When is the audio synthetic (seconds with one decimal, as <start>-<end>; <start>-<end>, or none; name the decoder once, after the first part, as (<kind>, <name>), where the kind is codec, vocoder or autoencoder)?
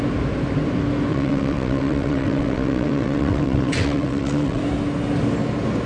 1.1-4.6 (vocoder, WaveNeXt)